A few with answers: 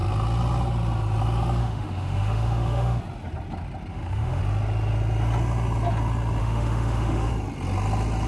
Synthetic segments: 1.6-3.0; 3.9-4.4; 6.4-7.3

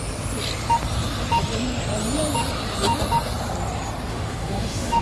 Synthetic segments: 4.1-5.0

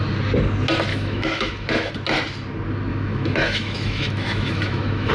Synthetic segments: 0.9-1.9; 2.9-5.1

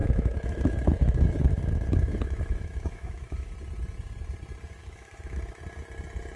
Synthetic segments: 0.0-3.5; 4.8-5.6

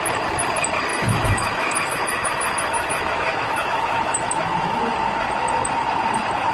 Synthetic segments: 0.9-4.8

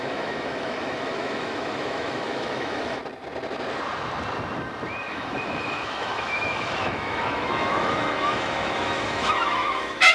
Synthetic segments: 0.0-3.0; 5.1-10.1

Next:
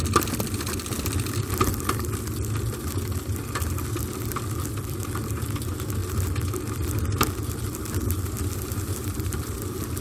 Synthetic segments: none